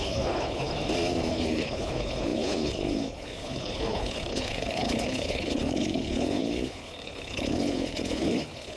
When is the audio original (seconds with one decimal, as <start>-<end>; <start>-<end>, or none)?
0.7-1.3